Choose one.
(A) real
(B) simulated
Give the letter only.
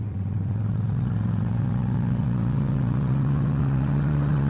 B